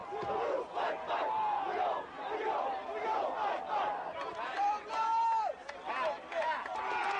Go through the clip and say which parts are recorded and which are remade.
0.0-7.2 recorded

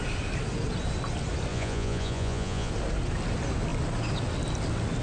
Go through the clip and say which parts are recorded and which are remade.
0.0-1.5 recorded; 1.5-2.7 remade; 2.7-5.0 recorded

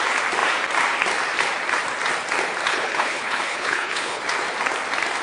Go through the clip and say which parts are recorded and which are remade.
0.0-2.7 recorded; 2.7-4.2 remade; 4.2-5.2 recorded

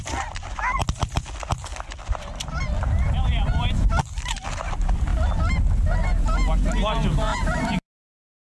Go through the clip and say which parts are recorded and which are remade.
0.0-0.6 remade; 0.6-1.7 recorded; 1.7-4.0 remade; 4.0-7.3 recorded; 7.3-8.2 remade; 8.2-8.6 recorded

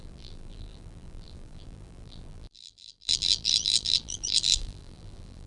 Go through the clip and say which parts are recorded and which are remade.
0.0-5.5 remade

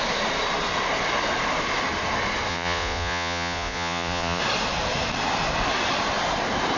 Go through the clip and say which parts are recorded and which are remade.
0.0-2.5 recorded; 2.5-4.4 remade; 4.4-6.8 recorded

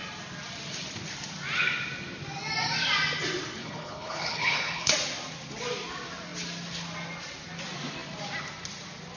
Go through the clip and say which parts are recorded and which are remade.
0.0-3.6 recorded; 3.6-4.9 remade; 4.9-9.2 recorded